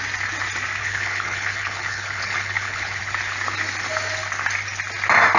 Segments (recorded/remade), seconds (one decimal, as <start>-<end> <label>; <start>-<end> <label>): 0.0-0.8 recorded; 0.8-3.0 remade; 3.0-5.4 recorded